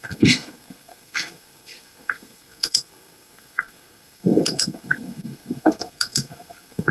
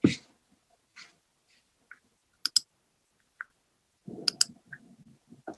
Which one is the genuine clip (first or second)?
second